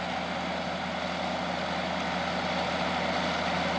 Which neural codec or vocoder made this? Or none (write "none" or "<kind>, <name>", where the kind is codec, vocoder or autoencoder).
none